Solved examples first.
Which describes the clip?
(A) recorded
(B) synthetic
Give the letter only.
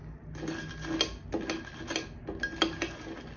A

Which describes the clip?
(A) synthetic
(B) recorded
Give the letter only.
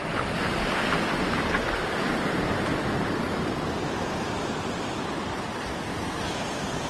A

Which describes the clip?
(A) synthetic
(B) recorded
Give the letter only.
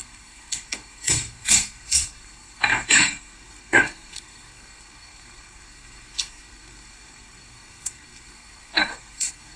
A